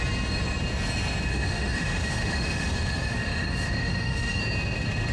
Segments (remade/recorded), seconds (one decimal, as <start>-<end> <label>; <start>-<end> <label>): 0.0-1.3 recorded; 1.3-4.4 remade; 4.4-5.1 recorded